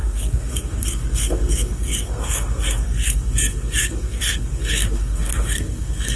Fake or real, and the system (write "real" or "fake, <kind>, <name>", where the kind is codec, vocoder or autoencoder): fake, codec, SNAC